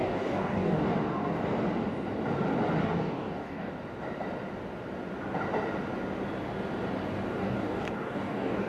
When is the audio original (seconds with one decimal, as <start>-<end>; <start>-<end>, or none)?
0.8-2.8; 3.7-7.4